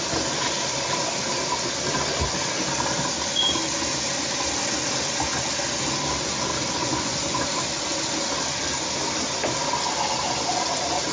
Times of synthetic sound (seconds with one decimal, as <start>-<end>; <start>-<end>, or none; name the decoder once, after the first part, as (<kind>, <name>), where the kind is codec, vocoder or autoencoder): 6.8-7.4 (vocoder, Vocos)